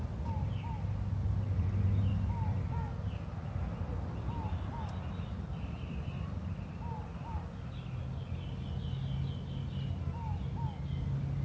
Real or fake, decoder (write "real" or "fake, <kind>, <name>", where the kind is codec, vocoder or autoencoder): real